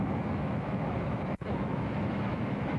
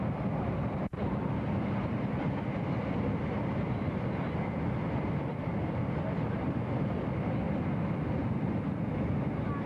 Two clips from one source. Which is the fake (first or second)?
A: first